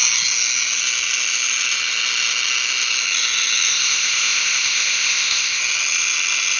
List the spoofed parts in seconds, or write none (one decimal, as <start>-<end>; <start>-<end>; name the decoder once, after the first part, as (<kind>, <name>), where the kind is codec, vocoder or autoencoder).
3.7-5.6 (codec, ZipCodec)